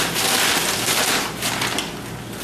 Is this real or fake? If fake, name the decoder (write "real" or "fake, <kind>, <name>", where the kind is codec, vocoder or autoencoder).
real